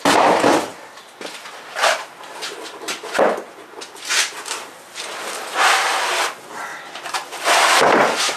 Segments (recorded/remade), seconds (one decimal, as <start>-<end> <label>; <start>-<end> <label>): 0.0-6.7 recorded; 6.7-7.8 remade; 7.8-8.4 recorded

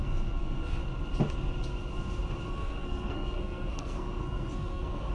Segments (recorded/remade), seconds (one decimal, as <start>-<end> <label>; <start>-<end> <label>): 0.0-0.8 remade; 0.8-2.5 recorded; 2.5-5.1 remade

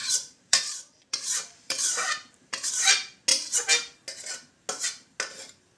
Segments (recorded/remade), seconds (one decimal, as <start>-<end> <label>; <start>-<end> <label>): 0.0-2.7 remade; 2.7-5.8 recorded

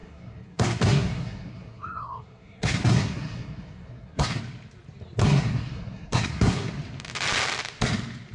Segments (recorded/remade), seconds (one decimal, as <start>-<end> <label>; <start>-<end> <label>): 0.0-4.4 remade; 4.4-5.2 recorded; 5.2-6.7 remade; 6.7-8.3 recorded

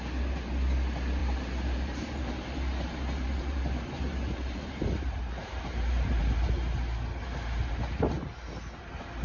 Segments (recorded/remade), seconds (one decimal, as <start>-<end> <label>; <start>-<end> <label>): 0.0-1.2 recorded; 1.2-6.3 remade; 6.3-9.2 recorded

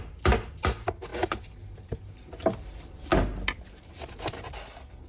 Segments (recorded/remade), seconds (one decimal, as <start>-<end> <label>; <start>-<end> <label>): 0.0-5.1 recorded

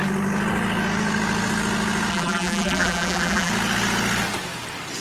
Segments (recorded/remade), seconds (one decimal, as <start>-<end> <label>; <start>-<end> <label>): 0.0-2.1 recorded; 2.1-3.5 remade; 3.5-5.0 recorded

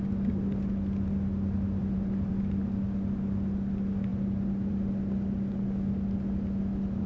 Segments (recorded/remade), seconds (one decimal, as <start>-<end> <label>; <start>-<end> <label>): 0.0-1.8 recorded; 1.8-2.4 remade; 2.4-7.1 recorded